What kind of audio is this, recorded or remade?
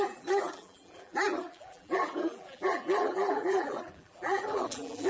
remade